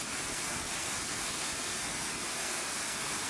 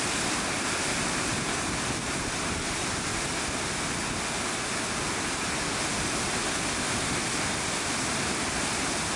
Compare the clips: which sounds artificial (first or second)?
first